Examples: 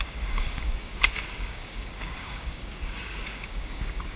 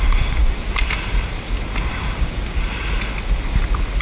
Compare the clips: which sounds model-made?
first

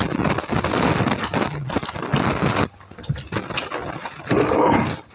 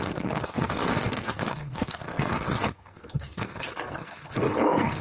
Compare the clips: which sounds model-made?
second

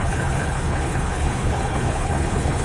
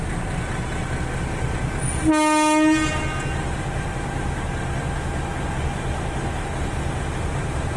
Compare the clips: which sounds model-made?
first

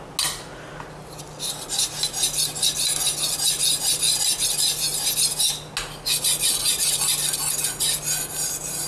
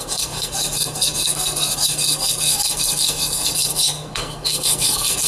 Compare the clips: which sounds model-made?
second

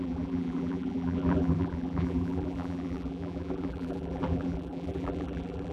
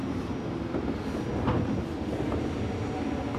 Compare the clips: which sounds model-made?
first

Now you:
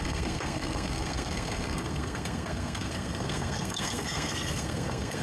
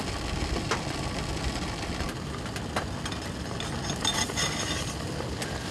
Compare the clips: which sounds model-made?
first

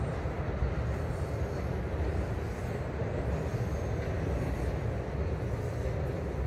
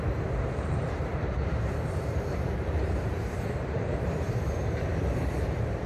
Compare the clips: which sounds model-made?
second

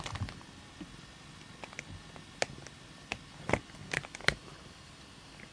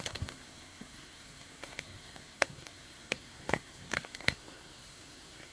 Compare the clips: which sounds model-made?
second